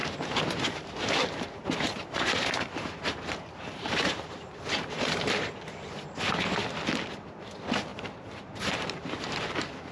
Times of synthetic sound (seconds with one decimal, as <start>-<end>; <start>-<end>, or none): 0.0-0.9; 1.6-6.6; 7.9-9.9